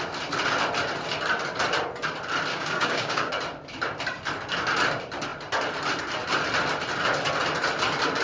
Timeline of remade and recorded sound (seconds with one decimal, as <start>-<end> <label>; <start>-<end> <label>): 0.0-2.5 recorded; 2.5-3.3 remade; 3.3-8.2 recorded